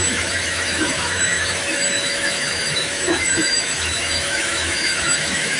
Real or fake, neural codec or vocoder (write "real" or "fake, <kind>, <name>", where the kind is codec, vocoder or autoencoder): fake, autoencoder, DAC-VAE